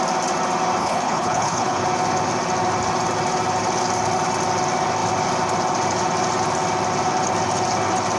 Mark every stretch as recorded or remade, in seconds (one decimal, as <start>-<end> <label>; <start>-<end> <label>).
0.0-0.8 recorded; 0.8-1.8 remade; 1.8-8.2 recorded